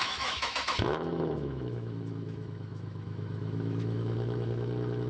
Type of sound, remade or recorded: remade